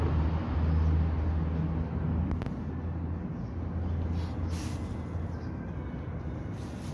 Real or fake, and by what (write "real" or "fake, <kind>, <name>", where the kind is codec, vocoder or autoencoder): real